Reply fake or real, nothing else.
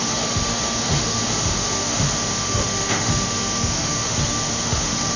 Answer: fake